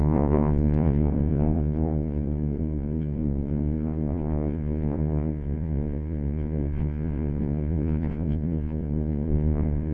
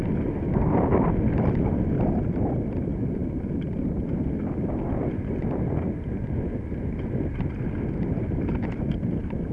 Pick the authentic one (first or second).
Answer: second